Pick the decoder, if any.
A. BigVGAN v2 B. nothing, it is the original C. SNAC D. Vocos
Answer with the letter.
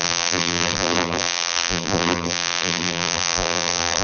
A